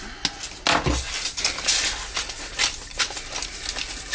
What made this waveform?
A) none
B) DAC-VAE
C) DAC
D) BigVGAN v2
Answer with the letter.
A